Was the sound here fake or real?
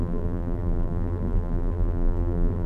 fake